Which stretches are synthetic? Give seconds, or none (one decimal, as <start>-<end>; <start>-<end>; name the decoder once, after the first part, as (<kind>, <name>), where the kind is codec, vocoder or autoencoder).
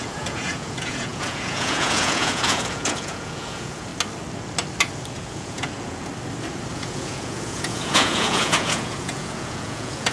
0.0-3.9 (vocoder, Vocos); 5.1-6.1; 6.7-10.1